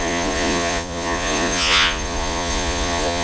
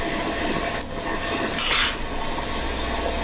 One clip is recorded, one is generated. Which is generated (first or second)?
first